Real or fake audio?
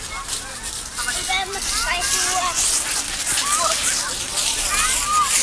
real